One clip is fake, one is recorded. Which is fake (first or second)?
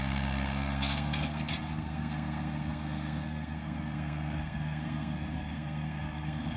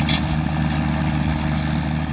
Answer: first